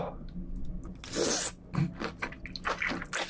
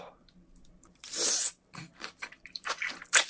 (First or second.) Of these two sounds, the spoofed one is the second